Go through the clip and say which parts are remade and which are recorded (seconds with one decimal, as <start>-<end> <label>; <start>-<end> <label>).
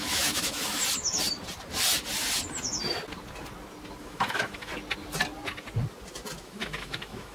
0.0-0.8 remade; 0.8-4.0 recorded; 4.0-4.7 remade; 4.7-6.4 recorded; 6.4-7.3 remade